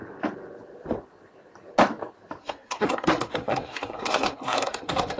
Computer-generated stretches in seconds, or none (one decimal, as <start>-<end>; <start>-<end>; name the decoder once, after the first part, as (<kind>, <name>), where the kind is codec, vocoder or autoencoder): 2.4-5.2 (codec, SNAC)